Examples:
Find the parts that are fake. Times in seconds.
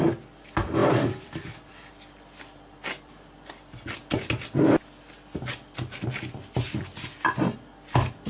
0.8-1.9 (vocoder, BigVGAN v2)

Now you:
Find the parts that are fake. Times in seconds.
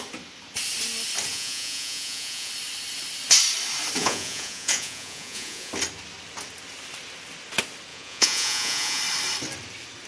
1.3-2.5 (vocoder, Vocos); 4.0-5.7; 7.9-9.0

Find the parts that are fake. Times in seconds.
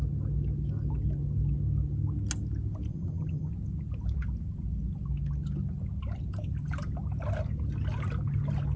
2.9-3.5 (vocoder, HiFi-GAN)